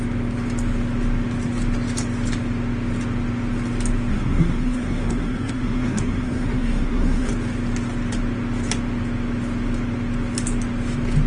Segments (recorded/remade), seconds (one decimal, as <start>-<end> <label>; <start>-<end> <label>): 0.0-4.1 recorded; 4.1-7.3 remade; 7.3-11.3 recorded